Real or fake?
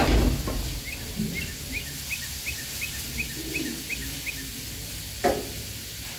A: real